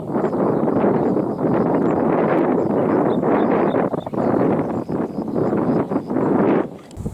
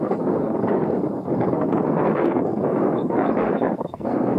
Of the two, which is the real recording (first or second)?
first